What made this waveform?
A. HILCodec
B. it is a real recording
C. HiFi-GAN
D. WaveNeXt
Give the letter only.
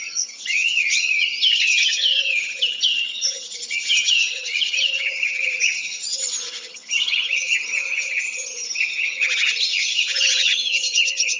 C